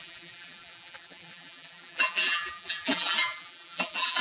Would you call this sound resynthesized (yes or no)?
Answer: yes